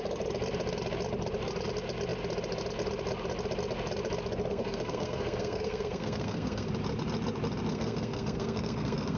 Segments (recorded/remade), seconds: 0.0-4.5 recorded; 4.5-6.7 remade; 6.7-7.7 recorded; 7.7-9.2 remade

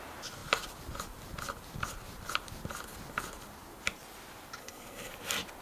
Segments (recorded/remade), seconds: 0.0-4.6 recorded; 4.6-5.1 remade; 5.1-5.6 recorded

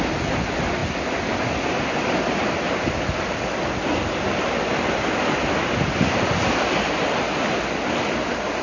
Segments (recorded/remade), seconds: 0.0-8.6 recorded